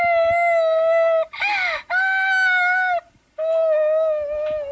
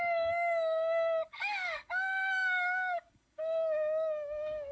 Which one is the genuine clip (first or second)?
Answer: first